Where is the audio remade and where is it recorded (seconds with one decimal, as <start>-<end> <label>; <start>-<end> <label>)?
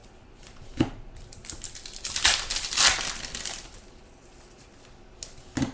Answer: 0.0-5.7 recorded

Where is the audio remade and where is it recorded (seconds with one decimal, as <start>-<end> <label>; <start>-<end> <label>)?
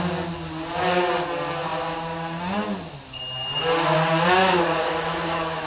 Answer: 0.0-5.7 recorded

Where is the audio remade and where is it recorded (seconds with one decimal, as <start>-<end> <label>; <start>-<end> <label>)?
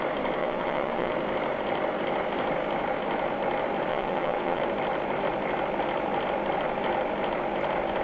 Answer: 0.0-0.4 recorded; 0.4-1.1 remade; 1.1-3.9 recorded; 3.9-4.6 remade; 4.6-8.0 recorded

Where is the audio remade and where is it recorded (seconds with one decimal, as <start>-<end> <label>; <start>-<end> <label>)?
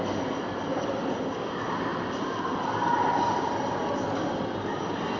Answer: 0.0-5.2 recorded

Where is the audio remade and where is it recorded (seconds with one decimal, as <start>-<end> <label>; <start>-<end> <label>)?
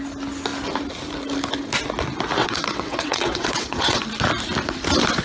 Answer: 0.0-2.4 recorded; 2.4-4.0 remade; 4.0-5.2 recorded